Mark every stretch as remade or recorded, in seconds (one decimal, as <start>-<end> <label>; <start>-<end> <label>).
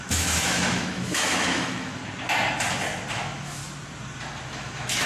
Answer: 0.0-2.0 remade; 2.0-3.1 recorded; 3.1-3.6 remade; 3.6-4.5 recorded; 4.5-5.1 remade